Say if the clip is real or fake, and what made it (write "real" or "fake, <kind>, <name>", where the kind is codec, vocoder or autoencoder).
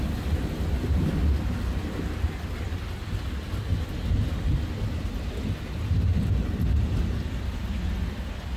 real